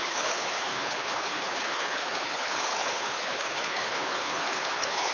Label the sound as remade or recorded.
remade